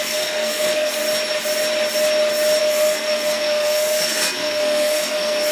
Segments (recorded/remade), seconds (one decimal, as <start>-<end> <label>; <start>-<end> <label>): 0.0-1.0 remade; 1.0-2.6 recorded; 2.6-5.5 remade